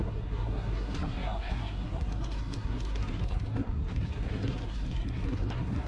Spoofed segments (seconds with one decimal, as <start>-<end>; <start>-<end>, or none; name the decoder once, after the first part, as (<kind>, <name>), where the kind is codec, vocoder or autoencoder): 0.0-5.9 (codec, SNAC)